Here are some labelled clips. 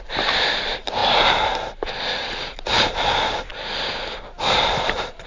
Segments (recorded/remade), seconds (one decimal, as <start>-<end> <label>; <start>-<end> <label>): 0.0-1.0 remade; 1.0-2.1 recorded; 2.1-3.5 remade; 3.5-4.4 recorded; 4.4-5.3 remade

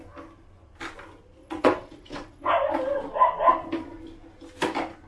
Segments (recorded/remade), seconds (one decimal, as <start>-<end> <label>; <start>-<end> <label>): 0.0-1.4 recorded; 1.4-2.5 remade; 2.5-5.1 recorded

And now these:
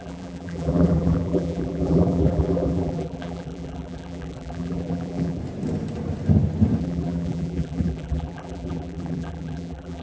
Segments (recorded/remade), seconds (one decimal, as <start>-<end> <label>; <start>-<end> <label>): 0.0-5.4 remade; 5.4-6.8 recorded; 6.8-10.0 remade

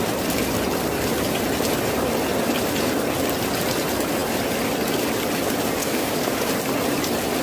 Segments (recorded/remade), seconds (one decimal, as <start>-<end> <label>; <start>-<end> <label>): 0.0-5.8 recorded; 5.8-6.5 remade; 6.5-7.4 recorded